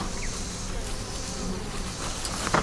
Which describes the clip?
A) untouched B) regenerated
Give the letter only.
A